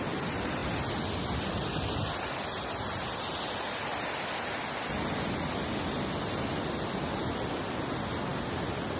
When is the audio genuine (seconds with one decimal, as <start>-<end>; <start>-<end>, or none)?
0.0-9.0